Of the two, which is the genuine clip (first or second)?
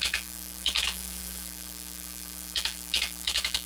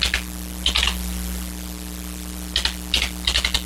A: second